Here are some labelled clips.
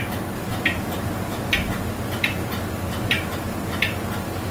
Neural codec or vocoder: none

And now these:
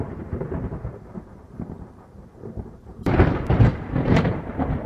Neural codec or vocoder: vocoder, BigVGAN v2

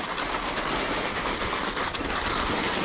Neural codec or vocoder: none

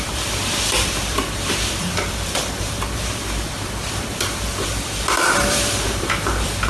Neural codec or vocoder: vocoder, BigVGAN v2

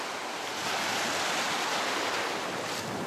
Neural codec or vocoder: none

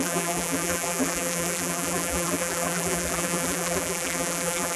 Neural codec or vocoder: vocoder, BigVGAN v2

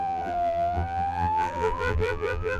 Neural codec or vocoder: vocoder, BigVGAN v2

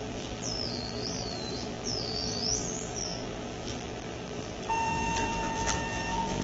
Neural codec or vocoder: vocoder, BigVGAN v2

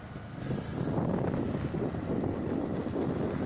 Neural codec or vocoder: none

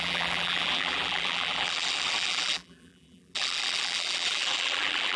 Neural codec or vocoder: vocoder, BigVGAN v2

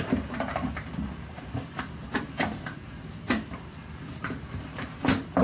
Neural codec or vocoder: vocoder, BigVGAN v2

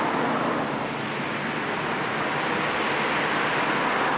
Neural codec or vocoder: none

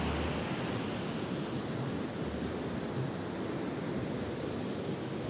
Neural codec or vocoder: none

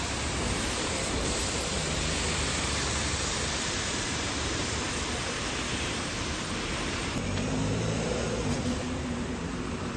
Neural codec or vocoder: vocoder, BigVGAN v2